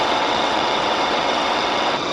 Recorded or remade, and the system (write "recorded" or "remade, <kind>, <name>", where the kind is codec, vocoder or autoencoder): remade, vocoder, WaveNeXt